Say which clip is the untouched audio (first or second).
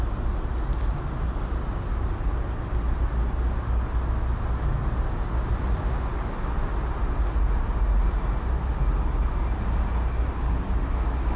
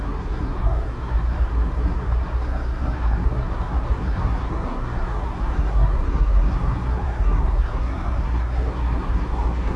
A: first